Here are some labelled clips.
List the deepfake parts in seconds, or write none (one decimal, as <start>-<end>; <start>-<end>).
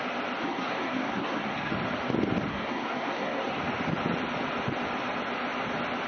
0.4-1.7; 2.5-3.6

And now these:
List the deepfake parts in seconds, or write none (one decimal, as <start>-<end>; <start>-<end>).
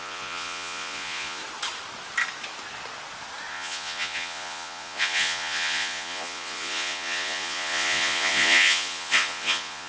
0.0-1.4; 3.5-9.9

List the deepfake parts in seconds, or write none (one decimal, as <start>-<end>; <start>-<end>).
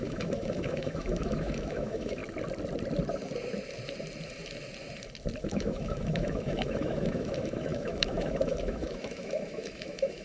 0.0-2.2; 5.4-10.2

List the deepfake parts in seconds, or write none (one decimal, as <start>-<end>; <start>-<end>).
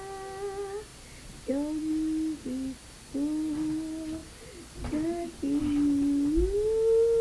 none